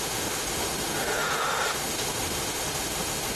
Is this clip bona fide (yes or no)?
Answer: no